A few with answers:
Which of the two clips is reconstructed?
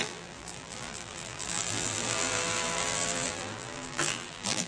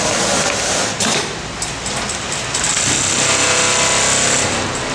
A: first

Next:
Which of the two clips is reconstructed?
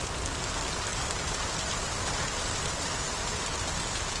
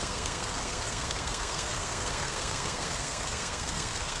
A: second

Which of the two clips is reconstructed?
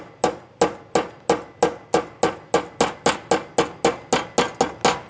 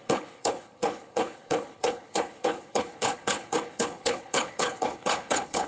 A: second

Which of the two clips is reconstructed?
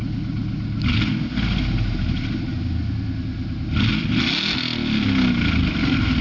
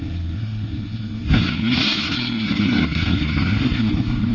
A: second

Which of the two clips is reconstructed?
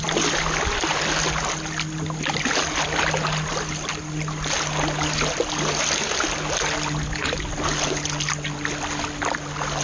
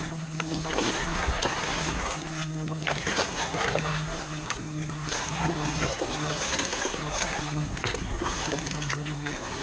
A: second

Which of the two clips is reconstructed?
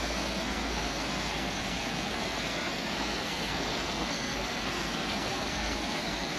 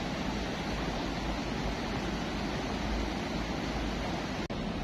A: first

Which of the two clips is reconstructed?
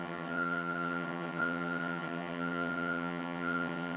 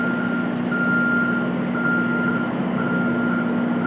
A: first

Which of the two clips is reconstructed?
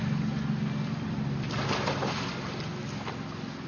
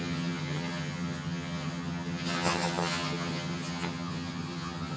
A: second